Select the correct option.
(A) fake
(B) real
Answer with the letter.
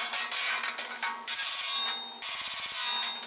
B